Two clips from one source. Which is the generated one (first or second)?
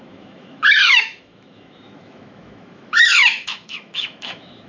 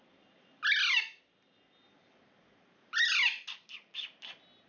first